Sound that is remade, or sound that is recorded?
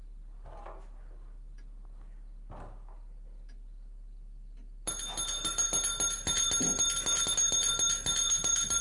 recorded